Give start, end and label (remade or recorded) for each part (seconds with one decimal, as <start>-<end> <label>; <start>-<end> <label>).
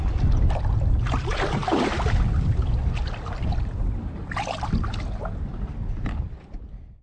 0.0-7.0 recorded